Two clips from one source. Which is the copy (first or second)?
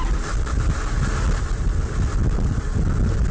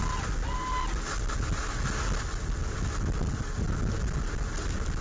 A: first